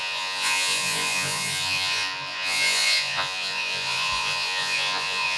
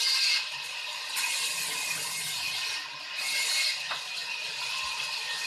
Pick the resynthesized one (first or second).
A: first